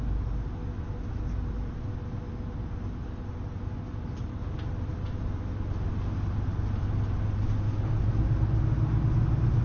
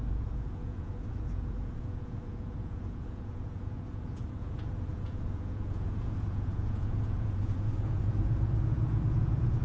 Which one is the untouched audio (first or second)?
first